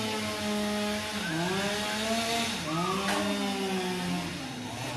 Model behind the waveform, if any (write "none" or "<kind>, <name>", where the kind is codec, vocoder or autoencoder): none